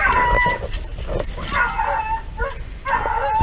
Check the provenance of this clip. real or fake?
real